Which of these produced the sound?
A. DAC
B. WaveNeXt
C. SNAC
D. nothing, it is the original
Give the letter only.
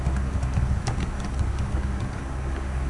A